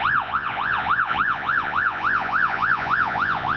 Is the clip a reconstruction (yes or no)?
yes